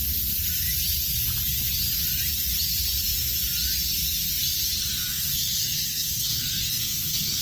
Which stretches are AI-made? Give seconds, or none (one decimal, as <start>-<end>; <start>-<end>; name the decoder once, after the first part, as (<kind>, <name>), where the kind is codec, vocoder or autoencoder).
5.0-7.4 (codec, SNAC)